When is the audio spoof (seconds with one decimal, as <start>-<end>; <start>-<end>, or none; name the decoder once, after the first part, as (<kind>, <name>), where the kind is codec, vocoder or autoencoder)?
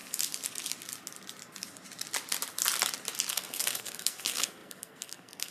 3.3-5.5 (codec, SNAC)